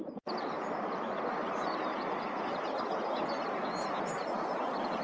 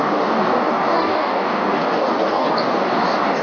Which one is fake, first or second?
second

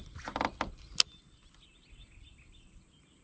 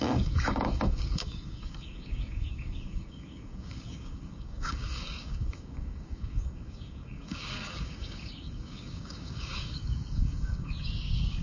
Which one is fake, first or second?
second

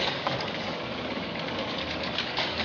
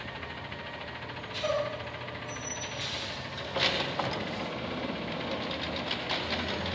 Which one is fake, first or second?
first